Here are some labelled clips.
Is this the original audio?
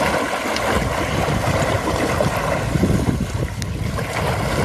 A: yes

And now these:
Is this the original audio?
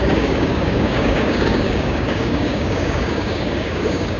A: no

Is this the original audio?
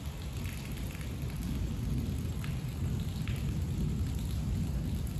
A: yes